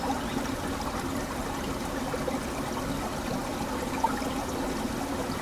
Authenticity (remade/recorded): recorded